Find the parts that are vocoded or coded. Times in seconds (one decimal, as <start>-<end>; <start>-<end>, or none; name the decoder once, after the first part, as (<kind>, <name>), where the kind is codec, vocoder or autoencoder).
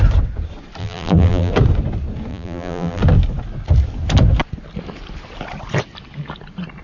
0.8-1.5 (vocoder, BigVGAN v2); 2.3-3.0